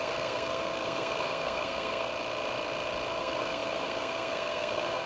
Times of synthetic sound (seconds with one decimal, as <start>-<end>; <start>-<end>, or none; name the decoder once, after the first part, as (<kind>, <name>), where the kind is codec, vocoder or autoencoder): 0.0-2.1 (codec, SNAC); 3.1-5.1